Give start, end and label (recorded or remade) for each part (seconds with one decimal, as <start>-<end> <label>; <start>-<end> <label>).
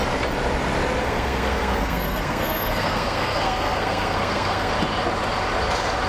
0.0-1.0 recorded; 1.0-4.7 remade; 4.7-6.1 recorded